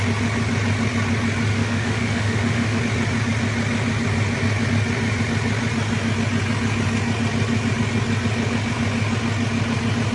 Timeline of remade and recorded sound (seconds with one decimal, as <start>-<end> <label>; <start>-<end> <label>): 0.0-1.5 recorded; 1.5-2.8 remade; 2.8-10.1 recorded